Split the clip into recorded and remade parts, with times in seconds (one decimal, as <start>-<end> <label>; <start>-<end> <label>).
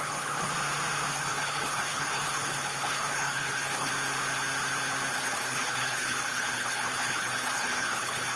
0.0-0.5 remade; 0.5-1.1 recorded; 1.1-3.9 remade; 3.9-5.1 recorded; 5.1-8.4 remade